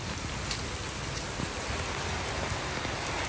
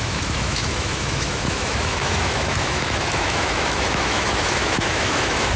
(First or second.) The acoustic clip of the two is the first